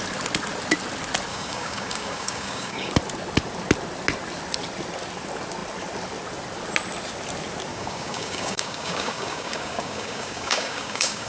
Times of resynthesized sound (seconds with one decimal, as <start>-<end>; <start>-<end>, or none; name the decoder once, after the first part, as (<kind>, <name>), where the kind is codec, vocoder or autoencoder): 1.3-2.9 (codec, DAC); 7.7-11.3